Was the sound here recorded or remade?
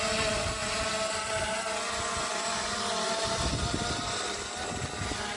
recorded